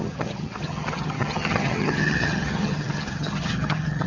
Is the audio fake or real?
fake